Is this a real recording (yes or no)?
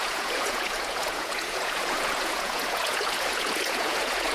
no